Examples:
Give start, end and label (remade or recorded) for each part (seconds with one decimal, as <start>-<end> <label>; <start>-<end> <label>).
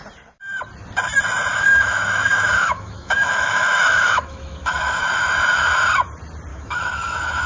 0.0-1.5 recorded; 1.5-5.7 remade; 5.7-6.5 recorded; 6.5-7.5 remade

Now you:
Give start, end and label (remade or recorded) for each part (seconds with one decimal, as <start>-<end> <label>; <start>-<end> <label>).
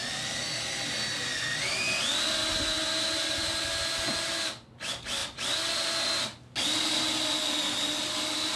0.0-8.6 recorded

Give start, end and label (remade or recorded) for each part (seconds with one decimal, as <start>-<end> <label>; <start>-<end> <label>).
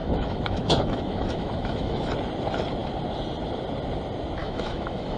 0.0-2.1 remade; 2.1-4.4 recorded; 4.4-5.2 remade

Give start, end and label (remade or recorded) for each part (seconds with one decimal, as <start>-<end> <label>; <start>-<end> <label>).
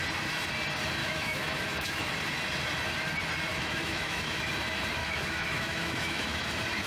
0.0-1.0 recorded; 1.0-2.1 remade; 2.1-3.5 recorded; 3.5-4.5 remade; 4.5-5.0 recorded; 5.0-6.5 remade; 6.5-6.9 recorded